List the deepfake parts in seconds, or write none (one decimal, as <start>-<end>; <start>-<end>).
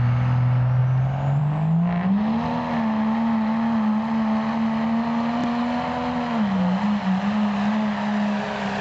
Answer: none